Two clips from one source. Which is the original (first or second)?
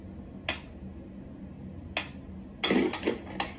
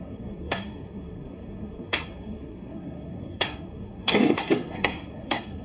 first